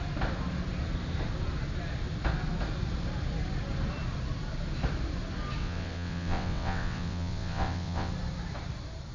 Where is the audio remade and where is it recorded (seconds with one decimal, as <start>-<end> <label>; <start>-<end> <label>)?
0.0-5.6 recorded; 5.6-8.1 remade; 8.1-9.1 recorded